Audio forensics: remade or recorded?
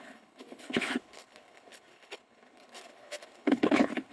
remade